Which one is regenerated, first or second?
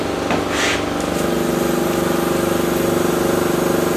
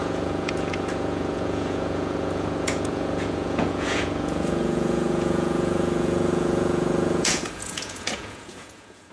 second